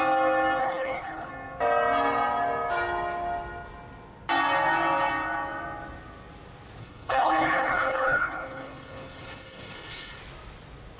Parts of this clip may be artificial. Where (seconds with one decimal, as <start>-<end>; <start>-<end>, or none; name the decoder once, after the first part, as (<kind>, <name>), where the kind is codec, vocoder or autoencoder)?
0.6-1.3 (codec, HILCodec); 6.8-10.2